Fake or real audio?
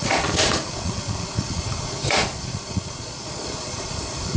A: fake